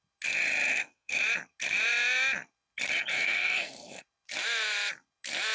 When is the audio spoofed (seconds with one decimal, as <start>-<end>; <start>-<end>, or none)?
0.7-1.2; 3.1-4.0